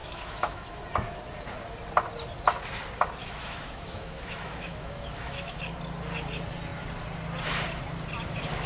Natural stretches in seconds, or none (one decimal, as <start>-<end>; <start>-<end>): 0.8-3.2; 5.6-8.7